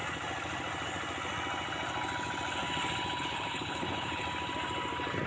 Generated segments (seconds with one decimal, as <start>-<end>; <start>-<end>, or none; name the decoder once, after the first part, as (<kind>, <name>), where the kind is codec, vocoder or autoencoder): 3.2-4.2 (codec, HILCodec)